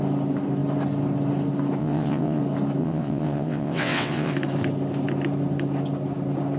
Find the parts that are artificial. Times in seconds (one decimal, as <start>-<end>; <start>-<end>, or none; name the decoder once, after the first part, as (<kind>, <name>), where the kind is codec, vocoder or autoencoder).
1.8-2.4 (vocoder, WaveNeXt); 2.8-4.3